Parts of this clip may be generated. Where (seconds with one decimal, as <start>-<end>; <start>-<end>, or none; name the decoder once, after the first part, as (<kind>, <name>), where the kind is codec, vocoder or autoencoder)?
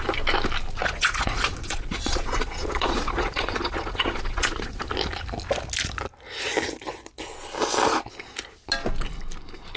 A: 0.8-4.8 (vocoder, Vocos)